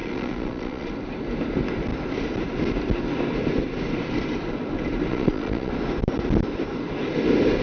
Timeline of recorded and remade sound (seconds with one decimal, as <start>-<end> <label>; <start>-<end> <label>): 0.0-0.9 remade; 0.9-5.1 recorded; 5.1-5.7 remade; 5.7-7.6 recorded